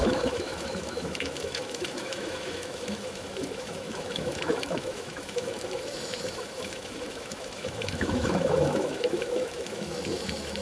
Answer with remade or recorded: remade